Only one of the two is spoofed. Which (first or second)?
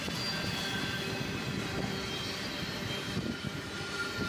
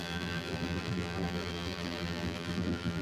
second